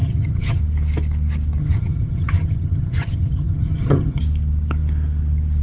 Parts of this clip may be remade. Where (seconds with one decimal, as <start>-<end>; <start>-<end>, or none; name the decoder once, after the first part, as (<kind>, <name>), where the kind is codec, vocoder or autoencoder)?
0.0-0.6 (vocoder, HiFi-GAN); 1.6-4.2